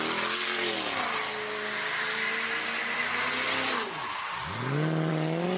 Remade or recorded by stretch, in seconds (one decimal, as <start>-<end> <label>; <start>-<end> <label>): 0.0-5.6 recorded